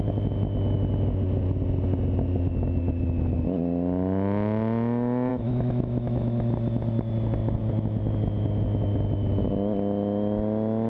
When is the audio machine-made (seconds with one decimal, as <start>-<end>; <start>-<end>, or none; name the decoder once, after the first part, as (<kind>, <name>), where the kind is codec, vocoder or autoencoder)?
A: 5.3-6.5 (autoencoder, DAC-VAE)